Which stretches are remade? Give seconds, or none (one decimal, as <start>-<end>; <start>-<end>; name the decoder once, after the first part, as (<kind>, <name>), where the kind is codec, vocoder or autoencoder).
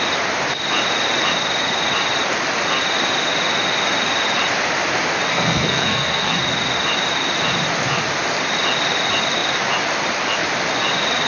5.3-6.3 (codec, SNAC)